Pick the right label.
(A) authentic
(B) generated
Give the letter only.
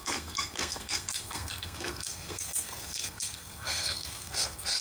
B